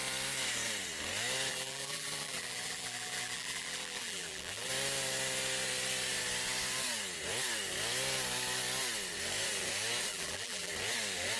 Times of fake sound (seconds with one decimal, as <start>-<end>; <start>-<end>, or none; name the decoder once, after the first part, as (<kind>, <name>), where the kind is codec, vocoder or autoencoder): 1.5-4.7 (vocoder, BigVGAN v2); 10.1-10.7